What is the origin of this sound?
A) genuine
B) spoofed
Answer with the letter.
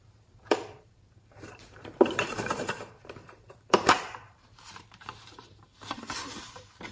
B